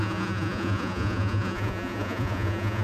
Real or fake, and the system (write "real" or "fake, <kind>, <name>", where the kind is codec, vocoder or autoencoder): fake, vocoder, Vocos